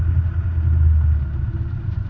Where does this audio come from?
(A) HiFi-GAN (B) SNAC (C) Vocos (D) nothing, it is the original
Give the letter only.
D